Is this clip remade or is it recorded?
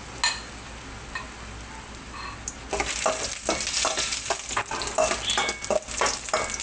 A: recorded